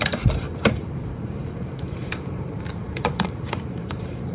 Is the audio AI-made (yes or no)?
yes